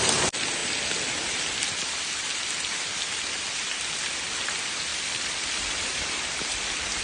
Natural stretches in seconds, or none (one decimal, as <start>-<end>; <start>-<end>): 0.0-4.9